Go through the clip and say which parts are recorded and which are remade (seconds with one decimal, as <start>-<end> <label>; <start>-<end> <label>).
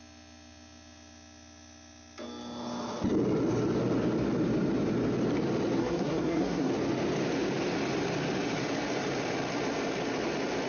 0.0-5.8 recorded; 5.8-6.7 remade; 6.7-10.7 recorded